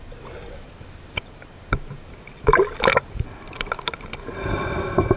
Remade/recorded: recorded